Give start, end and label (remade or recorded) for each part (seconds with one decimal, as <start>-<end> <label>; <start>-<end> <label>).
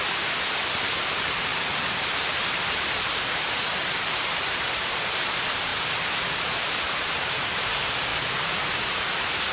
0.0-5.7 remade; 5.7-6.8 recorded; 6.8-8.1 remade; 8.1-8.8 recorded; 8.8-9.5 remade